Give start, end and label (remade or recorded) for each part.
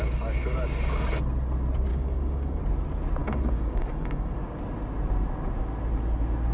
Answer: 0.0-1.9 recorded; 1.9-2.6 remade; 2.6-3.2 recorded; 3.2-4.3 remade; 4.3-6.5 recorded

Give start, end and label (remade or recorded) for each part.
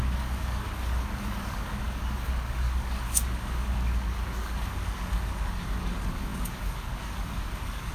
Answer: 0.0-7.9 remade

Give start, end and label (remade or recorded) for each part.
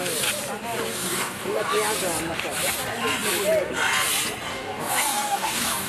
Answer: 0.0-0.9 recorded; 0.9-1.6 remade; 1.6-4.5 recorded; 4.5-5.9 remade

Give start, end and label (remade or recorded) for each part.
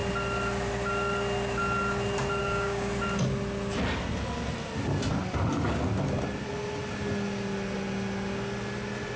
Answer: 0.0-2.4 recorded; 2.4-2.9 remade; 2.9-9.2 recorded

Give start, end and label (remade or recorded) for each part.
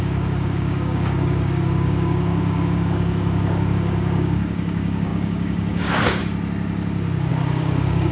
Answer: 0.0-6.2 remade; 6.2-7.3 recorded; 7.3-8.1 remade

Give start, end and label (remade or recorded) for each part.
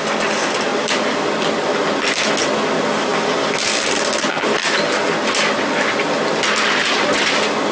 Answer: 0.0-7.7 recorded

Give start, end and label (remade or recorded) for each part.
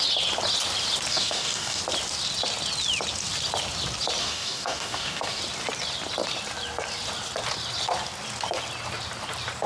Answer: 0.0-1.1 recorded; 1.1-1.8 remade; 1.8-4.2 recorded; 4.2-5.4 remade; 5.4-9.7 recorded